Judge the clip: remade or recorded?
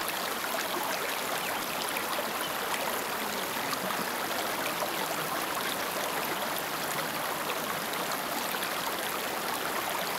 recorded